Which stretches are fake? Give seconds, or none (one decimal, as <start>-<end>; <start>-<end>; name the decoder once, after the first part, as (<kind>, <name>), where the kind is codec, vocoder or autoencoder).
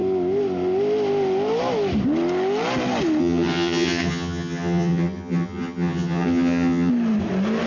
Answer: 3.2-6.9 (vocoder, HiFi-GAN)